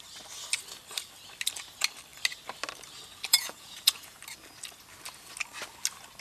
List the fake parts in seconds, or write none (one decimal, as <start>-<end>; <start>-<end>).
3.3-4.2